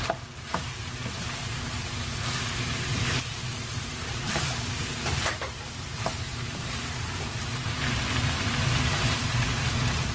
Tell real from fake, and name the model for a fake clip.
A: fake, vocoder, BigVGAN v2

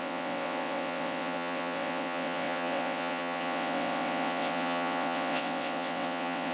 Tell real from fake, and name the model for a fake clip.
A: fake, vocoder, WaveNeXt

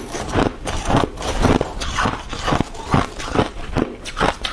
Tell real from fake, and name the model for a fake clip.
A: real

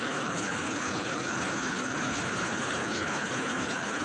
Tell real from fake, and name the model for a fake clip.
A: fake, codec, HILCodec